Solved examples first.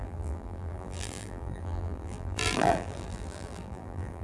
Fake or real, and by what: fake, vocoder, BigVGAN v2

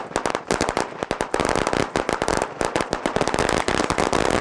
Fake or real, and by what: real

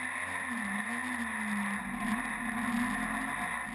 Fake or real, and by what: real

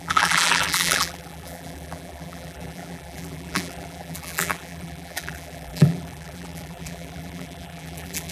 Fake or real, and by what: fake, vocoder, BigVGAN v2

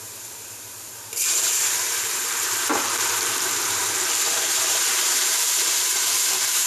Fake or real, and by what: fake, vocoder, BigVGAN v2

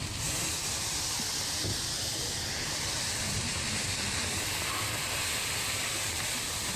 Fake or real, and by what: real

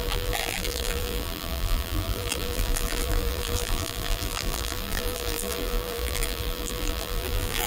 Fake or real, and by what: fake, vocoder, BigVGAN v2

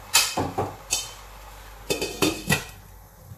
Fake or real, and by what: fake, vocoder, BigVGAN v2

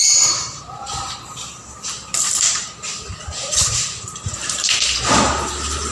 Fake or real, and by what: fake, vocoder, BigVGAN v2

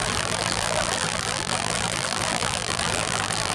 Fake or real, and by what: fake, vocoder, BigVGAN v2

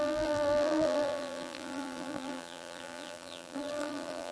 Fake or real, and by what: fake, vocoder, BigVGAN v2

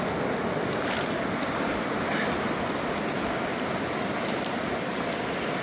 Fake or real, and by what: real